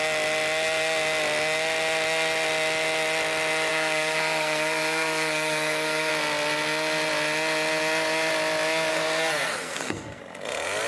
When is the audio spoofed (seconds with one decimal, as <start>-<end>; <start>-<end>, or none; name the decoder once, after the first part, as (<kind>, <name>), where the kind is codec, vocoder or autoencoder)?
3.7-6.1 (codec, SNAC); 8.9-10.2